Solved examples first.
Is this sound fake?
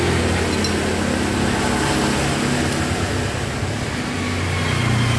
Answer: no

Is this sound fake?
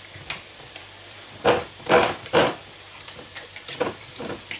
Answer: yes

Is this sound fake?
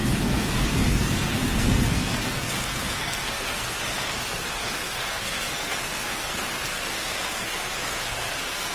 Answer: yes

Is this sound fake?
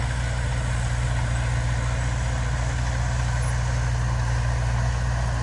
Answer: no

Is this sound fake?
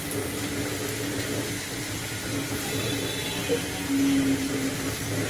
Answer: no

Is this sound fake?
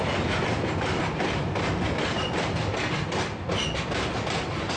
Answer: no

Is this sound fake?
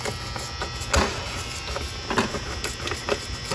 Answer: no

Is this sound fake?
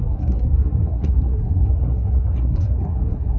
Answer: yes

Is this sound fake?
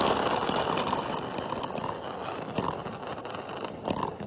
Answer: no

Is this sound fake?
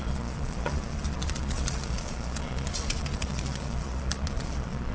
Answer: yes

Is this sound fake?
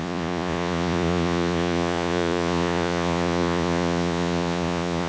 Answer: yes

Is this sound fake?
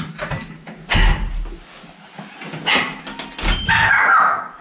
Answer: no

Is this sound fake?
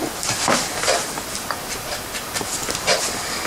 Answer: no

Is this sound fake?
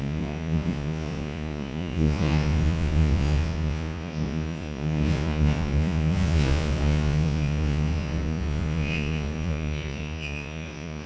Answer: yes